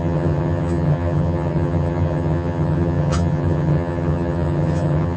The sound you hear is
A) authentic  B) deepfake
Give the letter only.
B